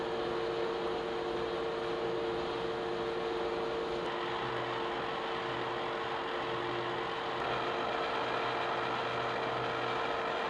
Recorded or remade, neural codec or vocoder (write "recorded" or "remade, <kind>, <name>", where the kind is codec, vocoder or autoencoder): recorded